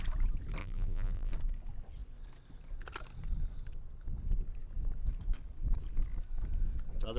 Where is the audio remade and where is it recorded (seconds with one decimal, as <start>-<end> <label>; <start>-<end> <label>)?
0.0-0.6 recorded; 0.6-1.3 remade; 1.3-7.2 recorded